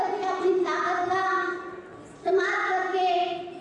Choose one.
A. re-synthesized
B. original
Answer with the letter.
B